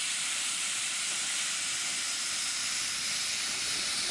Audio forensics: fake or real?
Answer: real